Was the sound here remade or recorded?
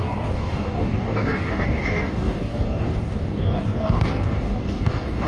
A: remade